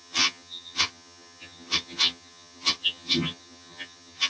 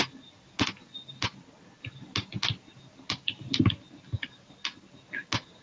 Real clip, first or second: second